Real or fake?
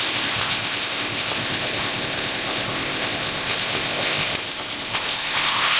fake